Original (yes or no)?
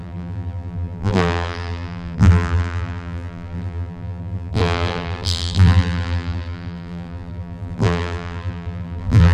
no